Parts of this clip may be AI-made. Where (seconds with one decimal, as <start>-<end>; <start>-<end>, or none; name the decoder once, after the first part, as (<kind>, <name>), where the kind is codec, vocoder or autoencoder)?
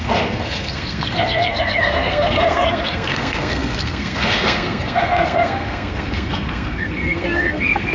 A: 0.0-7.9 (codec, SNAC)